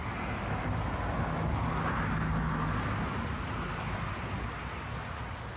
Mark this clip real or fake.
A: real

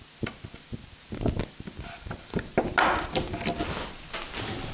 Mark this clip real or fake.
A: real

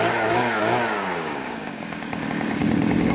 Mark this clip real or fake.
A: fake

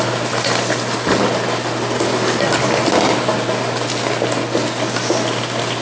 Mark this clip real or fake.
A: real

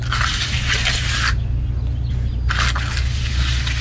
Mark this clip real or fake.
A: real